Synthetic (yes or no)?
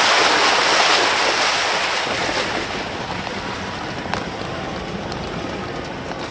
no